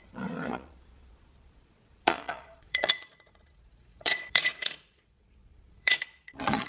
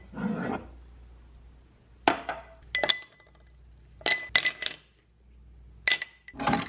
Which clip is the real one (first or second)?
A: second